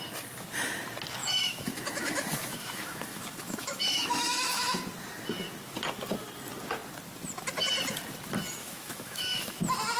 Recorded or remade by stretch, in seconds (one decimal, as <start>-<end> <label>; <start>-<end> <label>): 0.0-1.2 recorded; 1.2-4.8 remade; 4.8-8.6 recorded; 8.6-9.6 remade; 9.6-10.0 recorded